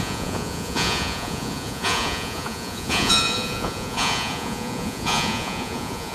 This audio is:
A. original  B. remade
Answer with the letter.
B